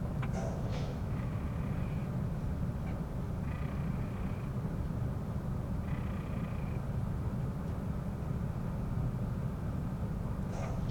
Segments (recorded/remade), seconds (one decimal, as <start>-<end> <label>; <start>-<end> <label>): 0.0-0.7 recorded; 0.7-1.3 remade; 1.3-10.9 recorded